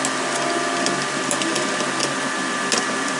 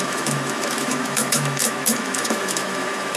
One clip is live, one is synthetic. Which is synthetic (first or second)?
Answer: second